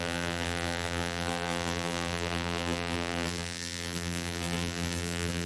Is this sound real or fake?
fake